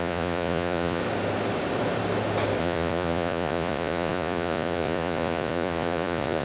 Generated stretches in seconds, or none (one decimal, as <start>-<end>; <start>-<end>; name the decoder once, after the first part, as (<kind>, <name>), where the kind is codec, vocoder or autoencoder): 0.0-1.0 (vocoder, Vocos); 2.6-6.4